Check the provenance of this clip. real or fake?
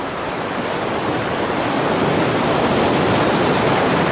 real